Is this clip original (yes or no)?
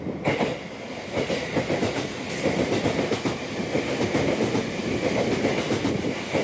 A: yes